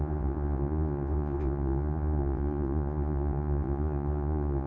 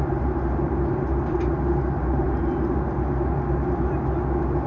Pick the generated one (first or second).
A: first